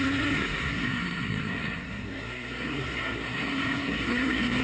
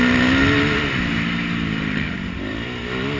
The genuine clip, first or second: second